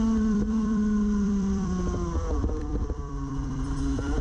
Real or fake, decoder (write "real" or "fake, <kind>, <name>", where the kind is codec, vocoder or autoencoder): fake, vocoder, BigVGAN v2